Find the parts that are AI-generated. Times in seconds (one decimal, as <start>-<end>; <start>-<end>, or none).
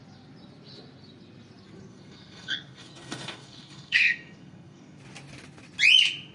1.9-5.0